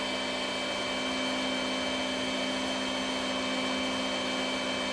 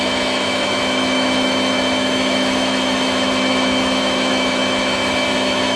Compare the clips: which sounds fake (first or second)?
second